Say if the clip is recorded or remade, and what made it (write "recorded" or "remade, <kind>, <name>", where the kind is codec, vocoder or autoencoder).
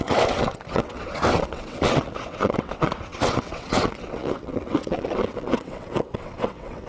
remade, vocoder, WaveNeXt